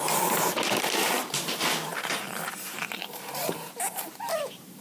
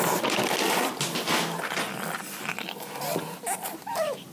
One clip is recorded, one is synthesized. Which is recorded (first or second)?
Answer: second